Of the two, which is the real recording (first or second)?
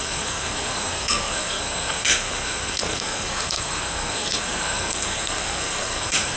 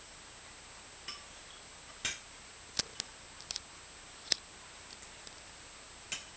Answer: second